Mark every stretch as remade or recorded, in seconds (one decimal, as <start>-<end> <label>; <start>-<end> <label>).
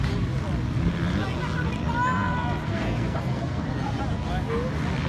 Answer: 0.0-2.6 recorded; 2.6-4.0 remade; 4.0-5.1 recorded